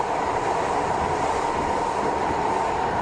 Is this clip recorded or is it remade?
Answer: recorded